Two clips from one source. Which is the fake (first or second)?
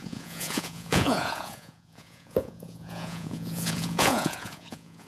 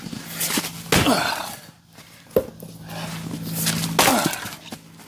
first